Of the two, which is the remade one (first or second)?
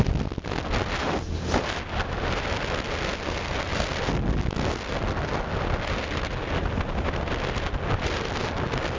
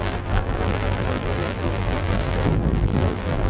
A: second